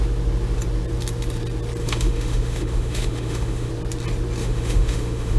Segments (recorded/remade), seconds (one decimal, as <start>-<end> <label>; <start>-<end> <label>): 0.0-1.8 recorded; 1.8-3.7 remade; 3.7-4.4 recorded; 4.4-5.4 remade

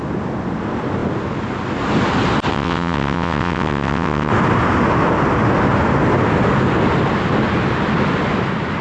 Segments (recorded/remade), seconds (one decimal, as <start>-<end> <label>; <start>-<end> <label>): 0.0-2.5 recorded; 2.5-4.3 remade; 4.3-8.8 recorded

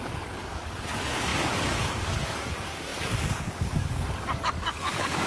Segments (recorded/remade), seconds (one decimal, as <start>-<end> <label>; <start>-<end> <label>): 0.0-5.3 remade

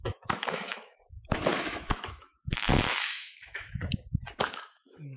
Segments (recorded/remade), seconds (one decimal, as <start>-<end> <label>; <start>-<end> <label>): 0.0-3.8 remade; 3.8-4.4 recorded; 4.4-5.2 remade

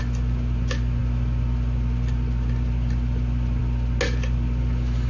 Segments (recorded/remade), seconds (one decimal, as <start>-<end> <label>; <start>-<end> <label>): 0.0-5.1 recorded

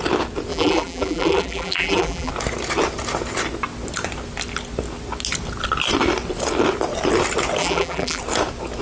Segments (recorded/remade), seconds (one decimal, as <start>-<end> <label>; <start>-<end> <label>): 0.0-0.5 recorded; 0.5-2.3 remade; 2.3-7.6 recorded; 7.6-8.2 remade; 8.2-8.8 recorded

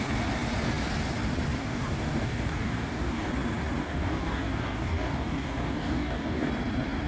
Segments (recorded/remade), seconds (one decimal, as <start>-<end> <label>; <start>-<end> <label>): 0.0-1.6 recorded; 1.6-3.3 remade; 3.3-3.8 recorded; 3.8-6.5 remade; 6.5-7.1 recorded